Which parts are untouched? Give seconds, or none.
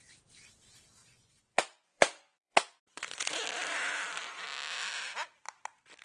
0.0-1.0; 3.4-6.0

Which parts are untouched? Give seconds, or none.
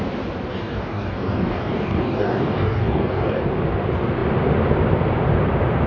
0.0-0.5; 3.4-5.9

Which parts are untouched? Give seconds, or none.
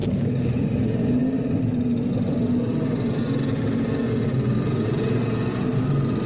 0.6-6.3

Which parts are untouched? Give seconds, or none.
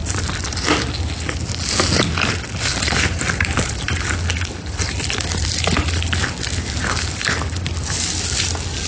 1.0-2.7; 5.4-6.8; 8.1-8.9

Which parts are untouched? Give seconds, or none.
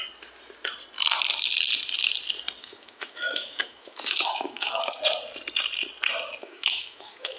0.0-2.6; 5.0-6.4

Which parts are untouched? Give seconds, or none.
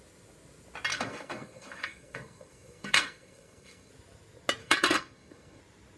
0.0-0.9; 3.9-4.6; 5.6-6.0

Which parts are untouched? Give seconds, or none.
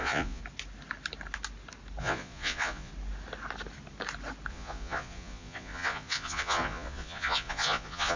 0.4-2.0; 2.9-4.5